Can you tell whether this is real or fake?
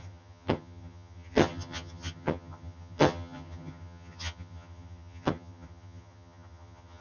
fake